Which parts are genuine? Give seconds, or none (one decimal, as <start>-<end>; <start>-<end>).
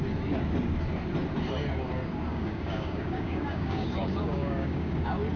0.0-2.3; 5.0-5.4